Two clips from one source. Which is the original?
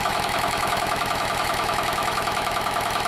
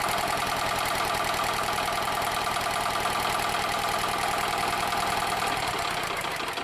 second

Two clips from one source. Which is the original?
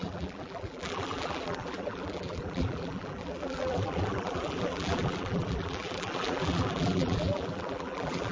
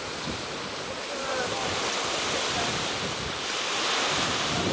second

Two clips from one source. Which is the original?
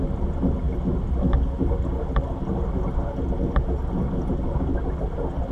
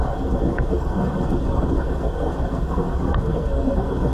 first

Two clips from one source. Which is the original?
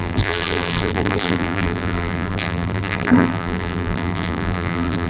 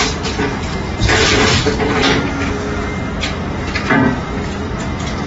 second